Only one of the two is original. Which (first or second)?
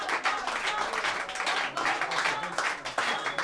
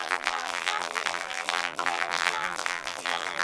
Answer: first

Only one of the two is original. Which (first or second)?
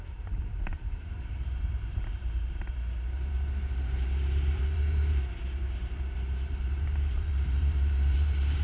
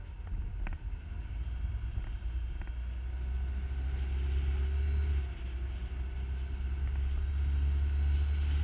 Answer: second